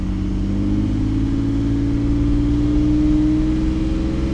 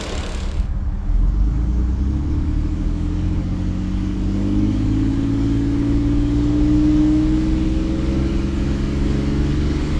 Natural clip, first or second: first